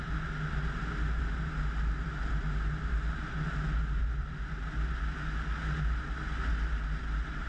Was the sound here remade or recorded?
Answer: recorded